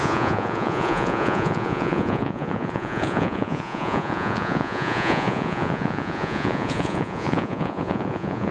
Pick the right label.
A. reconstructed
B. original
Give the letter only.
A